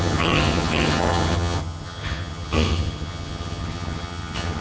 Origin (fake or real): fake